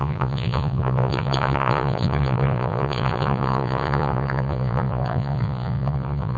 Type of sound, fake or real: fake